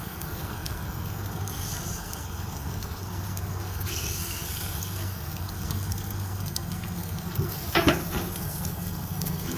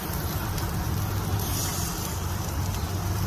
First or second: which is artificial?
first